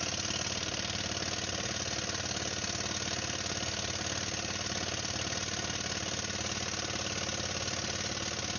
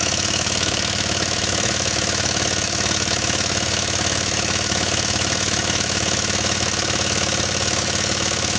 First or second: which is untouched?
first